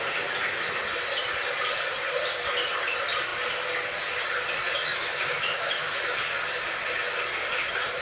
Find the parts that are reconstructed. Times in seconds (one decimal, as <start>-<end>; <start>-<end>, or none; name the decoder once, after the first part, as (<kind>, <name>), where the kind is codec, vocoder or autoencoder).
4.9-6.0 (autoencoder, DAC-VAE)